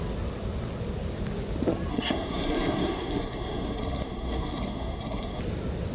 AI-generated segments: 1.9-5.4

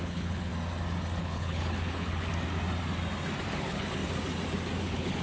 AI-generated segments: 0.0-0.5; 1.2-2.3; 3.5-4.0; 4.8-5.2

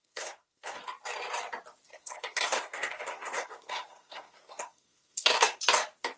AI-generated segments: 0.0-0.8; 1.9-5.6

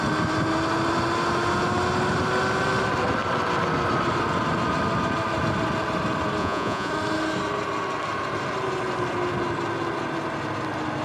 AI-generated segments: 6.4-6.9

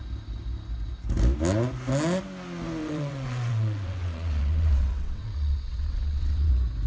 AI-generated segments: 2.8-6.5

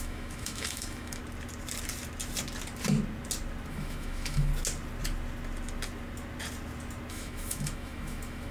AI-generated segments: 0.0-1.2; 3.7-4.5; 7.1-8.5